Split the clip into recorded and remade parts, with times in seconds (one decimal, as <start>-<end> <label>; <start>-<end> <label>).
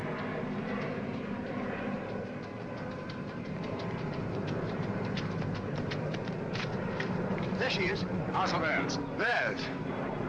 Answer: 0.0-0.8 recorded; 0.8-2.3 remade; 2.3-2.9 recorded; 2.9-10.3 remade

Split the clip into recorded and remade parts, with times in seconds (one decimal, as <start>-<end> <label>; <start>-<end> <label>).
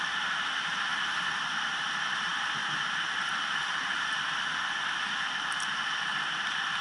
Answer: 0.0-0.9 recorded; 0.9-1.4 remade; 1.4-6.8 recorded